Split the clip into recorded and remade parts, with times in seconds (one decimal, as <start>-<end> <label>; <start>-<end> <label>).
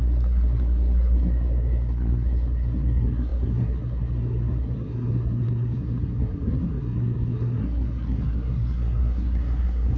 0.0-10.0 remade